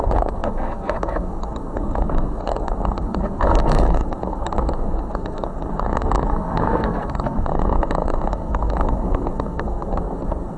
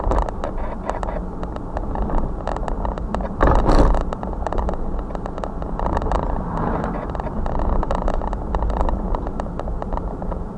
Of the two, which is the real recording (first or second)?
second